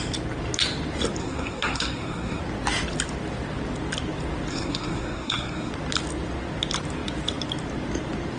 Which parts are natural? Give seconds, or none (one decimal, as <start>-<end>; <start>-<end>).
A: 0.0-1.2; 2.4-4.5; 5.7-8.4